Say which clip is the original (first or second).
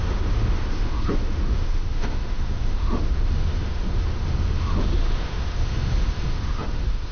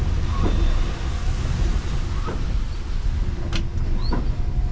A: second